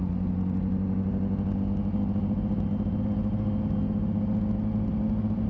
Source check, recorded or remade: recorded